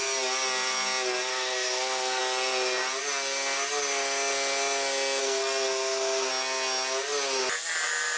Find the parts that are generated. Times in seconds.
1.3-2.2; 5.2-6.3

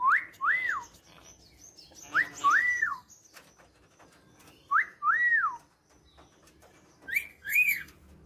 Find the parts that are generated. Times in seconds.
2.6-3.1; 7.3-7.9

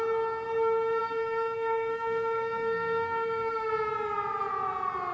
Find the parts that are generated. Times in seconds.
1.0-3.7